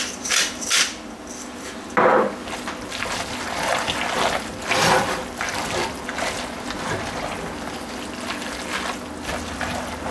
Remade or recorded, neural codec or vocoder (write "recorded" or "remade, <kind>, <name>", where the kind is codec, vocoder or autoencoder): recorded